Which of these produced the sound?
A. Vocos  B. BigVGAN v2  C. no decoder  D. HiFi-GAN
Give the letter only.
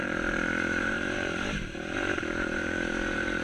B